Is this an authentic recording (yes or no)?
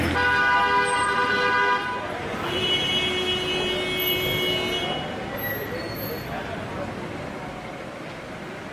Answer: yes